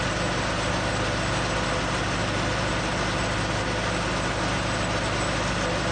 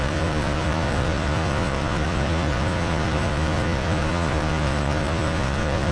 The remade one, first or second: second